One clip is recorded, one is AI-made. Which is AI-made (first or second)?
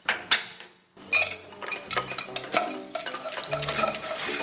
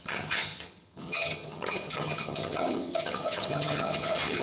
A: second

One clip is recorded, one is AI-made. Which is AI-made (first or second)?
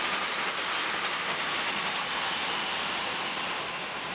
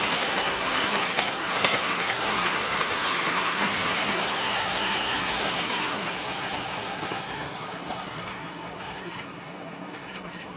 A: second